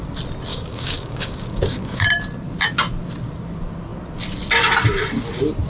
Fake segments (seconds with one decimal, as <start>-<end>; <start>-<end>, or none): 0.5-2.1